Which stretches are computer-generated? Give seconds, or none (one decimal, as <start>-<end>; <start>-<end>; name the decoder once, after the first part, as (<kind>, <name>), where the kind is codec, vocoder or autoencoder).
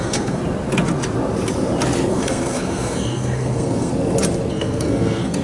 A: 0.0-0.4 (codec, SNAC); 2.1-3.9; 4.5-5.4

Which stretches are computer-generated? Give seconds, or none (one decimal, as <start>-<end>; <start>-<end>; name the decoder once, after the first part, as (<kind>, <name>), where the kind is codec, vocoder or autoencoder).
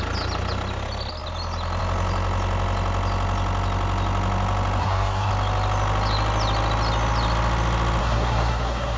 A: 4.8-5.3 (codec, SNAC); 8.0-9.0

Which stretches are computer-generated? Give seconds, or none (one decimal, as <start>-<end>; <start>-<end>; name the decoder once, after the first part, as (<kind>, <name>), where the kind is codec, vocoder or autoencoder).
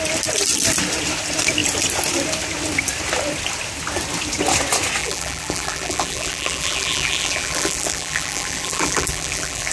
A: 5.0-9.7 (vocoder, BigVGAN v2)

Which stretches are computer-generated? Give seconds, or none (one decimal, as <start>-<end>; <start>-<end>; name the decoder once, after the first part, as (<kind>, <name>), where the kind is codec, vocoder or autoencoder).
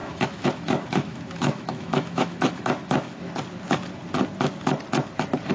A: 0.0-3.3 (autoencoder, DAC-VAE)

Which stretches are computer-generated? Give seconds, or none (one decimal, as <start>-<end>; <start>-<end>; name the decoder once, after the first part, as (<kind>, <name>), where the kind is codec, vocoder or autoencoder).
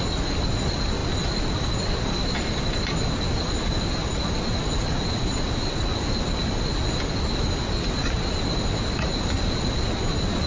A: none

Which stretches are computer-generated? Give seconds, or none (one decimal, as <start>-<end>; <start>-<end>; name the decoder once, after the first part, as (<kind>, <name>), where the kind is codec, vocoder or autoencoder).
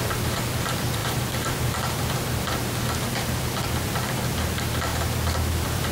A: 0.0-4.9 (vocoder, BigVGAN v2); 5.5-5.9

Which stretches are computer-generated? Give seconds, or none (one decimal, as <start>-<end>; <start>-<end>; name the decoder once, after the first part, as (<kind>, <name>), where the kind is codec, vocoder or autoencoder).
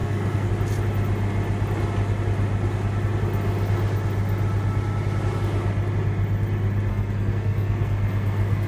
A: 0.0-0.5 (codec, SNAC); 6.9-8.7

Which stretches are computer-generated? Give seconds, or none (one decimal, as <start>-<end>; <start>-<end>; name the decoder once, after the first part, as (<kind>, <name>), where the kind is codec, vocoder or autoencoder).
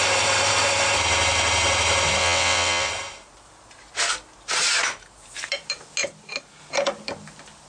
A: 2.2-2.9 (vocoder, WaveNeXt)